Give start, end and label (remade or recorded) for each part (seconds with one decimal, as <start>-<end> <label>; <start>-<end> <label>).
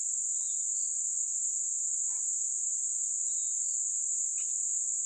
0.0-5.1 recorded